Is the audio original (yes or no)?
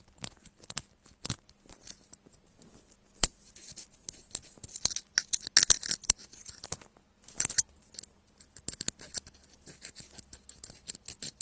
yes